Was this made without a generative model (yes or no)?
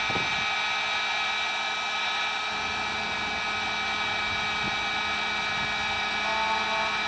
yes